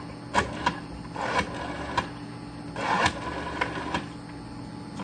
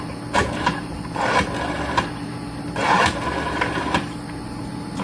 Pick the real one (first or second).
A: first